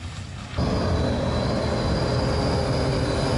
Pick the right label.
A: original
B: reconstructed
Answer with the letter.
A